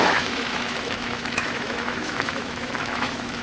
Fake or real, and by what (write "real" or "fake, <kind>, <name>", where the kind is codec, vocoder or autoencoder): fake, autoencoder, DAC-VAE